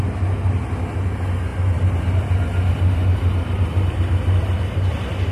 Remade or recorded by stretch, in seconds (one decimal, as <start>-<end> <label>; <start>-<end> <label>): 0.0-5.3 recorded